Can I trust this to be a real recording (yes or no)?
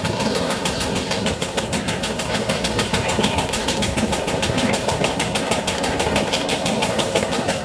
no